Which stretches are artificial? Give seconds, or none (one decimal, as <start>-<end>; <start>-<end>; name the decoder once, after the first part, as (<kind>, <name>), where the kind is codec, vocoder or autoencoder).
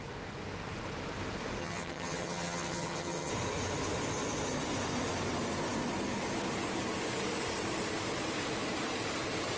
1.6-3.3 (vocoder, HiFi-GAN)